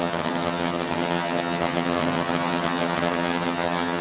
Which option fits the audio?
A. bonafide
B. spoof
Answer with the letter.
B